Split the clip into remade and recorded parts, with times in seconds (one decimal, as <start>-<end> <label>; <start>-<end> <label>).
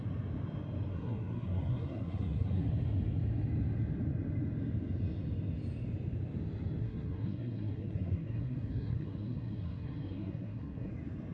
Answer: 0.0-0.9 recorded; 0.9-2.7 remade; 2.7-6.8 recorded; 6.8-10.9 remade; 10.9-11.3 recorded